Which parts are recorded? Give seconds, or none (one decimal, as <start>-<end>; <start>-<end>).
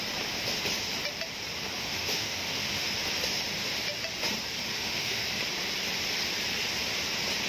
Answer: 0.0-1.8; 2.9-4.7; 5.2-7.5